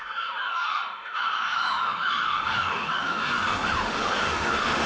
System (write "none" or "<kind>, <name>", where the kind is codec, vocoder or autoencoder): autoencoder, DAC-VAE